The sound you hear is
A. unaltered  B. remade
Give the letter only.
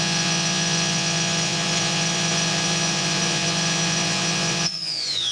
B